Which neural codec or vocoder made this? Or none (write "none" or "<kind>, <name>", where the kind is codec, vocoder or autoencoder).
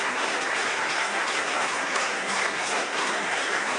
codec, SNAC